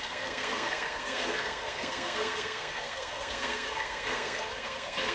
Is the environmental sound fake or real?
fake